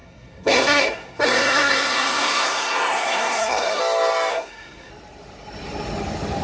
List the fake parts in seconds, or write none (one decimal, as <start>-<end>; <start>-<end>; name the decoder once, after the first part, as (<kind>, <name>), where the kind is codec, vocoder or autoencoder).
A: 0.0-3.8 (codec, SNAC); 4.3-4.9